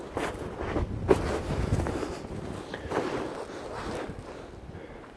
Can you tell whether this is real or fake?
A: real